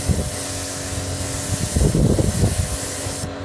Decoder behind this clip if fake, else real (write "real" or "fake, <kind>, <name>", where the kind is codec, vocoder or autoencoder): real